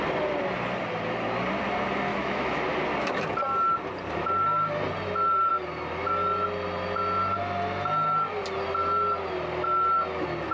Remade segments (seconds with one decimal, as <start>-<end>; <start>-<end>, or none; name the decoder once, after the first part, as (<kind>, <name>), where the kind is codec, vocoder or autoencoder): 2.1-2.6 (autoencoder, DAC-VAE)